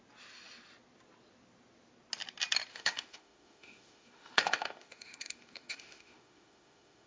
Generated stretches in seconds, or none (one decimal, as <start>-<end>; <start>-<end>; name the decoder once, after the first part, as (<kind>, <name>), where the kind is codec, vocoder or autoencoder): 2.7-7.1 (autoencoder, DAC-VAE)

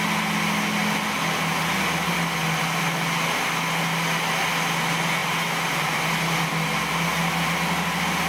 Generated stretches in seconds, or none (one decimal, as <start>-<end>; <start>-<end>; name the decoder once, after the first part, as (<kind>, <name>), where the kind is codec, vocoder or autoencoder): none

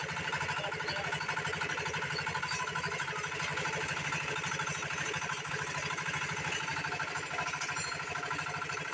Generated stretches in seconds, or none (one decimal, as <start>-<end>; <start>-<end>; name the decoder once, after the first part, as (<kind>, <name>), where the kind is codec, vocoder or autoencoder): none

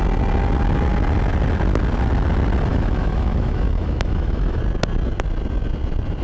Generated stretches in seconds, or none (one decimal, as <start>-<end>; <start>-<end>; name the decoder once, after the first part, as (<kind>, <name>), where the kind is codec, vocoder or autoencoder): 2.7-4.6 (autoencoder, DAC-VAE)

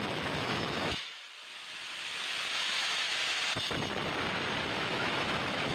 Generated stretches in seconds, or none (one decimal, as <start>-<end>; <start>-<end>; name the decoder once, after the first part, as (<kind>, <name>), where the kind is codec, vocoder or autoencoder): 0.0-1.1 (autoencoder, DAC-VAE); 2.5-3.2; 4.7-5.7

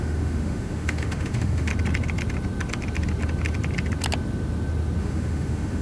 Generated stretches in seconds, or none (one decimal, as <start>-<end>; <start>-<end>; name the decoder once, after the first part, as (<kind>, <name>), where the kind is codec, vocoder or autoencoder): 0.0-1.7 (autoencoder, DAC-VAE); 5.0-5.8

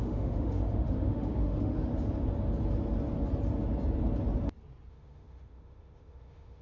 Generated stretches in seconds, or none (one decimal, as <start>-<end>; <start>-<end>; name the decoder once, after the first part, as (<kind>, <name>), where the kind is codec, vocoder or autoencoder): 0.0-1.9 (autoencoder, DAC-VAE); 4.9-6.6

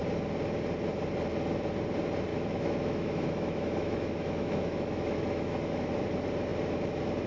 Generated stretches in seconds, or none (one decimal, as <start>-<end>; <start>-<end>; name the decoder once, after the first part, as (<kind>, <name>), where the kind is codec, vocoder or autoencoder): 2.3-5.9 (autoencoder, DAC-VAE)